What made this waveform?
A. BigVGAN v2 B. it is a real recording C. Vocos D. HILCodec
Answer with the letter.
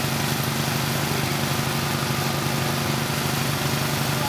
B